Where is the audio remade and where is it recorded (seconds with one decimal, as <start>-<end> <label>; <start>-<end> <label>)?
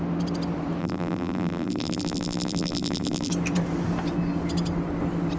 0.0-0.8 recorded; 0.8-3.3 remade; 3.3-5.4 recorded